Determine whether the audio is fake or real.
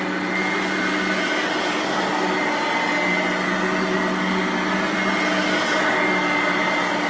real